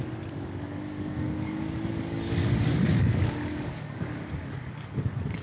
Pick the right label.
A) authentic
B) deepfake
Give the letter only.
B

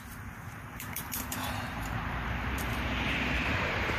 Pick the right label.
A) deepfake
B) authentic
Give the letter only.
A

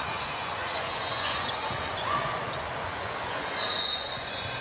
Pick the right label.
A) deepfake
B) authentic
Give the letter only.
A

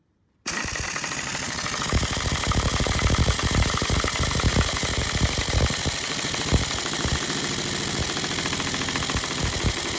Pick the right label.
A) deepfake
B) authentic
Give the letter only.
B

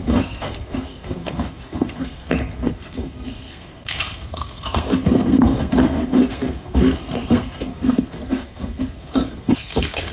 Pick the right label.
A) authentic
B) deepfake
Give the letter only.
B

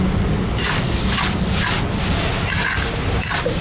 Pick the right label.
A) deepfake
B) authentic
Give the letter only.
B